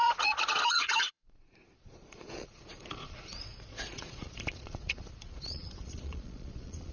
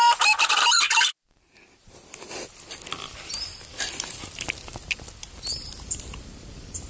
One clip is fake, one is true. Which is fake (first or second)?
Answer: first